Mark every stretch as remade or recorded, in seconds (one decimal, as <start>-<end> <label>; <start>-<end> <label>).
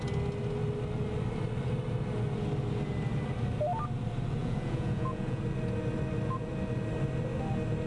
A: 0.0-4.4 recorded; 4.4-5.4 remade; 5.4-7.9 recorded